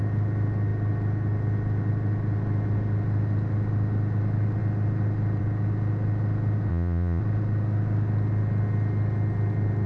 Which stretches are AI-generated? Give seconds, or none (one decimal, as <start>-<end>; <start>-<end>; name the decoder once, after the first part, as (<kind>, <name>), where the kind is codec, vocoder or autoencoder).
6.7-7.2 (vocoder, Vocos)